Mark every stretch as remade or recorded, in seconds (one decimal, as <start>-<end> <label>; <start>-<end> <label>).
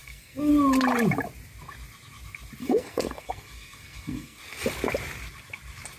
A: 0.0-0.5 remade; 0.5-2.6 recorded; 2.6-4.4 remade; 4.4-6.0 recorded